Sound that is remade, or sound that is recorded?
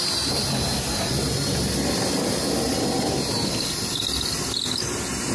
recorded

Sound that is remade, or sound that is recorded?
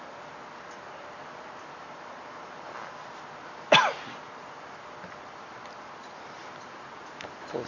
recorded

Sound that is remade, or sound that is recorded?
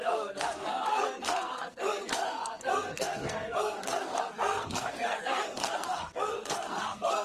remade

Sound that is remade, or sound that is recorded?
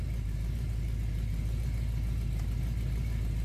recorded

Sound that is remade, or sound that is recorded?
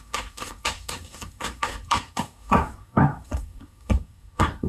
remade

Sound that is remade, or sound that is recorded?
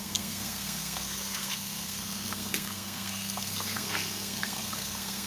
remade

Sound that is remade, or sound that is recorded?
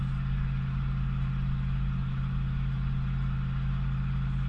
recorded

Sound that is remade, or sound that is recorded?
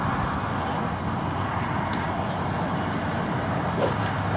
recorded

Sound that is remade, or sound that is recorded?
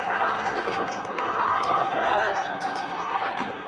remade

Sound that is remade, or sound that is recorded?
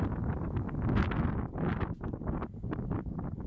recorded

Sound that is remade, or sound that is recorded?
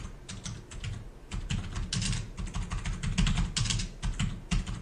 recorded